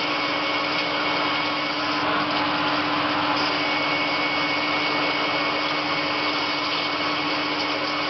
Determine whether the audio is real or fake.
real